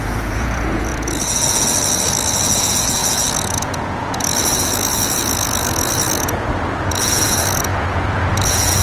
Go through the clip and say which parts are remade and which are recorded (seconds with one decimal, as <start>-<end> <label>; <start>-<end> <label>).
0.0-8.8 remade